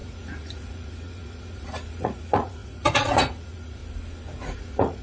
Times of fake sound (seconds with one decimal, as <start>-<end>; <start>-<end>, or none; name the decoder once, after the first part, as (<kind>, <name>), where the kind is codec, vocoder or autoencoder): 0.0-3.8 (vocoder, Vocos); 4.4-5.0